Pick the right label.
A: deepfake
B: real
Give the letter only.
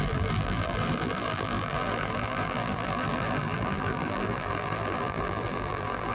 A